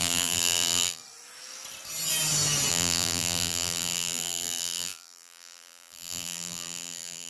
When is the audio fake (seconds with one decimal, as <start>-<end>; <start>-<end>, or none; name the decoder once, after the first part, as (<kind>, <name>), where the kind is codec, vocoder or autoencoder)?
0.0-1.0 (vocoder, BigVGAN v2); 2.7-7.3